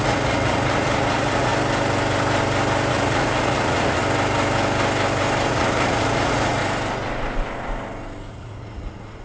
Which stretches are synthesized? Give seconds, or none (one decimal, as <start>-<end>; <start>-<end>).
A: 0.0-1.5; 2.9-4.0; 5.5-6.6; 8.3-9.2